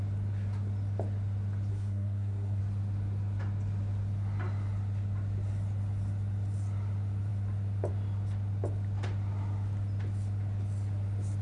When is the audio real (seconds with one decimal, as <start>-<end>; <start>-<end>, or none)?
0.0-1.7; 2.6-11.4